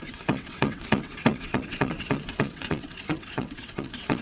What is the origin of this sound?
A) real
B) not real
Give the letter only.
B